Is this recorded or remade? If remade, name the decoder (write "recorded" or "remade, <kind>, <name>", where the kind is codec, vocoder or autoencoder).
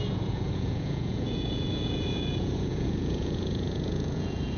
remade, vocoder, Vocos